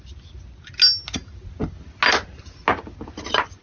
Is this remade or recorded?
recorded